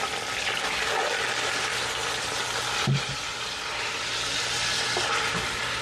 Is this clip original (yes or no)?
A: yes